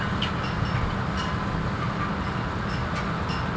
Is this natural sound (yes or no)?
yes